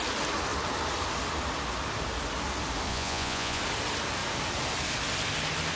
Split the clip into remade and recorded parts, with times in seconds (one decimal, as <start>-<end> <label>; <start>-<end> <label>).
0.0-2.9 recorded; 2.9-3.6 remade; 3.6-5.8 recorded